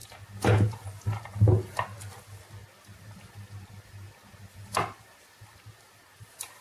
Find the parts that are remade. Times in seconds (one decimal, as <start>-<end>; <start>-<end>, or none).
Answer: none